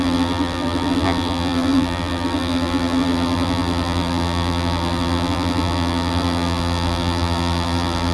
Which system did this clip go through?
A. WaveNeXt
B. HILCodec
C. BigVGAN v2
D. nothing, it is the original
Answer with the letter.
C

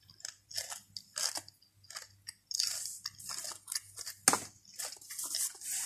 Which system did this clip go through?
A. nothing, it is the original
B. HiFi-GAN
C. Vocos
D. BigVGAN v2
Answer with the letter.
A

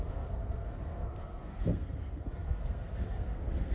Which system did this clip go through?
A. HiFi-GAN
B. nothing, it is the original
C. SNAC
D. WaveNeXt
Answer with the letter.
C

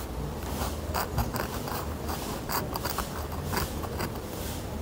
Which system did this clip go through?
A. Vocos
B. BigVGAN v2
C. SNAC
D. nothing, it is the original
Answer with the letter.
B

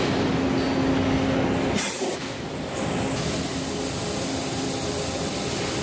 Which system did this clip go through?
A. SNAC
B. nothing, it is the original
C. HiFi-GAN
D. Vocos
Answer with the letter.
B